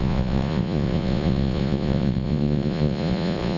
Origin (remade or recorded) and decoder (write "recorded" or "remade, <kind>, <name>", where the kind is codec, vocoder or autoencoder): remade, vocoder, Vocos